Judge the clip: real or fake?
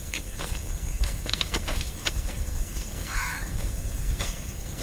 fake